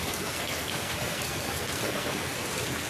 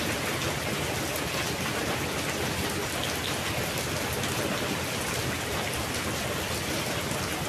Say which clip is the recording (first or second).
second